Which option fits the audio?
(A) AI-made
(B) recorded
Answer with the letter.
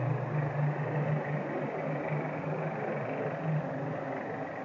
B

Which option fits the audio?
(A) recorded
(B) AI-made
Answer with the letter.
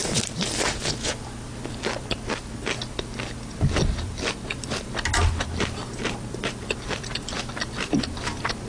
B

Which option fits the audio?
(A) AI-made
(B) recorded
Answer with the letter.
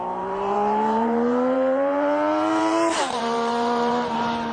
A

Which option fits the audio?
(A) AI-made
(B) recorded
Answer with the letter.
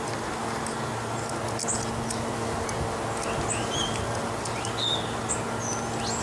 B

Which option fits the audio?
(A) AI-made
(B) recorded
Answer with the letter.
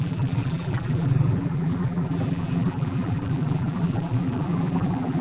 A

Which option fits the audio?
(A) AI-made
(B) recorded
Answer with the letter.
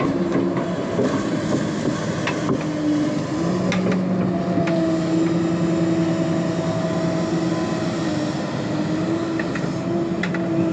B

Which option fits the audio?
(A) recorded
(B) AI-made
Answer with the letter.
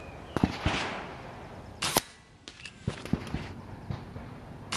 A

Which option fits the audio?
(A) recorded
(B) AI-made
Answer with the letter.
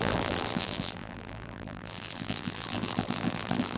B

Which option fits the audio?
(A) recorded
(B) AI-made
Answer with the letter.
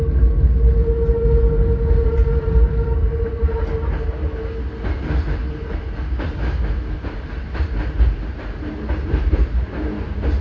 A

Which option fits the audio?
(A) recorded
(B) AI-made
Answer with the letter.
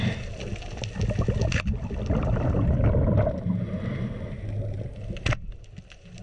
A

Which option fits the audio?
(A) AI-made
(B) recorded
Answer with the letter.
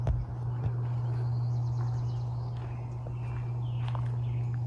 B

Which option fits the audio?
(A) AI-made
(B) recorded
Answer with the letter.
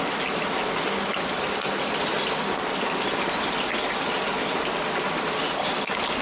B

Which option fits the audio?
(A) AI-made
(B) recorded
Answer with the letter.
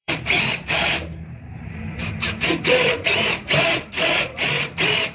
A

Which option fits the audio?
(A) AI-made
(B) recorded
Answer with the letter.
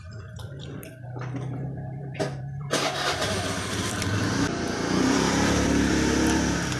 A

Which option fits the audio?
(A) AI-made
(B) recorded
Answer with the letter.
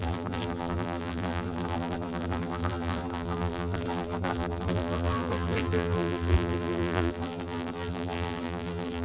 A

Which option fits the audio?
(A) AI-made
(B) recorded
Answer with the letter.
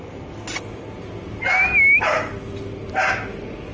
B